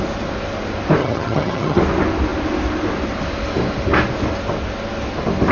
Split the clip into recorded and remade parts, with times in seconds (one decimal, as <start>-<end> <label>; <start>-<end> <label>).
0.0-1.0 recorded; 1.0-1.8 remade; 1.8-5.5 recorded